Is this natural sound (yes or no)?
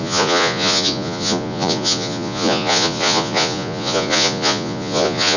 no